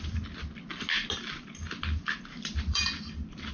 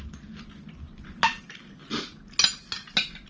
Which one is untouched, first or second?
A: second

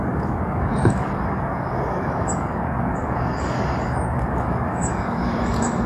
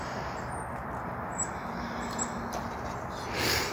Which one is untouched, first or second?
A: second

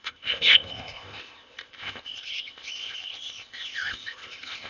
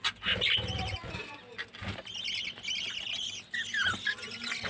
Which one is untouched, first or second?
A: second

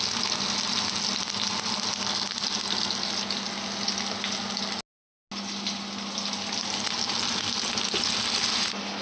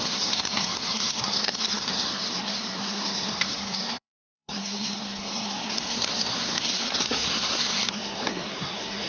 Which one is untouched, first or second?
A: first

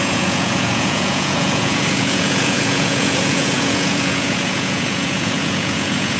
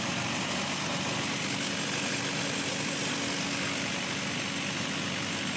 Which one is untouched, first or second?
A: second